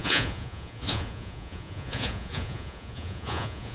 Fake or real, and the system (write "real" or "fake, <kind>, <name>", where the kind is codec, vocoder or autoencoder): fake, vocoder, Vocos